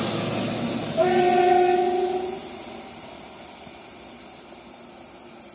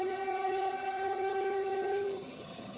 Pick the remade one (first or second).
second